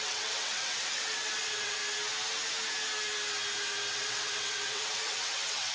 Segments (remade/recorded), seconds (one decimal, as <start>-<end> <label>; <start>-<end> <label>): 0.0-1.8 remade; 1.8-4.0 recorded; 4.0-5.7 remade